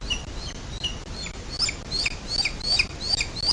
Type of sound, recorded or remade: recorded